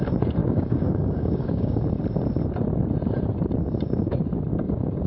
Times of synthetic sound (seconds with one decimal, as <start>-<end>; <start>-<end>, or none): 0.4-1.8; 4.5-5.1